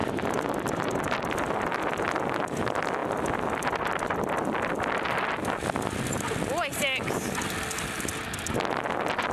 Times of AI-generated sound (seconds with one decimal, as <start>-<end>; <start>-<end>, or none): none